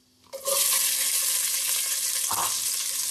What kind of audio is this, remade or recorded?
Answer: recorded